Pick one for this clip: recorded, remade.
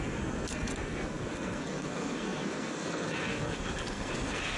remade